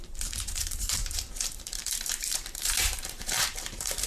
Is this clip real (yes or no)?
no